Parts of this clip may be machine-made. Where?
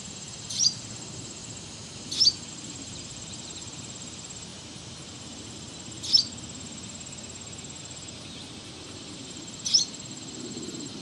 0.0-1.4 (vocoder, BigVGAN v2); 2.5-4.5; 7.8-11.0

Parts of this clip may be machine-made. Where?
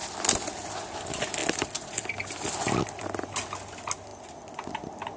none